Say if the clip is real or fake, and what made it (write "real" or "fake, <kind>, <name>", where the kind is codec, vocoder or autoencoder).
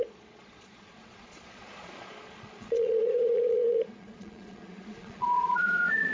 fake, vocoder, Vocos